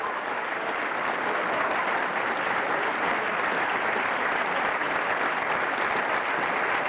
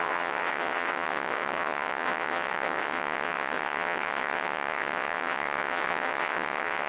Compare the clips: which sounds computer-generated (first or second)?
second